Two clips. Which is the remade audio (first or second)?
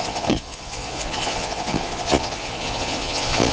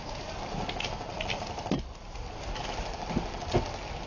first